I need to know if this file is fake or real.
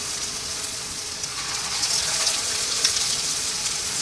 fake